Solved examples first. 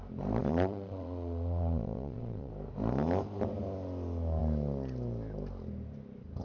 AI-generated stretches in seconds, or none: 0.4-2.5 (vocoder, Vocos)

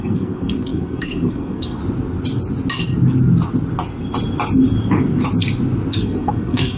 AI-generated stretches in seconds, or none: 0.0-1.8 (codec, SNAC); 5.9-6.8

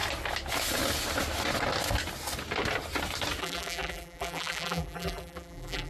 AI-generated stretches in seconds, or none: 3.4-5.9 (vocoder, BigVGAN v2)